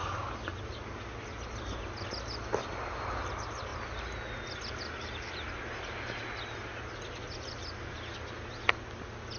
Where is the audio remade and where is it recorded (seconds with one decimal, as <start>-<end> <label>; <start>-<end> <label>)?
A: 0.0-9.4 recorded